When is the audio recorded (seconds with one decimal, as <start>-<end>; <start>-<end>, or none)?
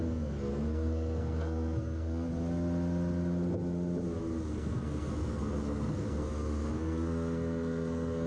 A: 2.3-4.5